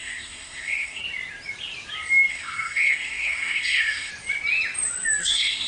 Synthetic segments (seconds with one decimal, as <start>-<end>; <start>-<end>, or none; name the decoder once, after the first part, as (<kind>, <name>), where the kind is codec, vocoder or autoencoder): 0.0-1.0 (codec, SNAC); 2.3-4.1; 5.2-5.7